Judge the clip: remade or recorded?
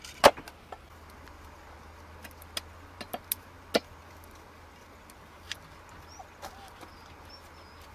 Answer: recorded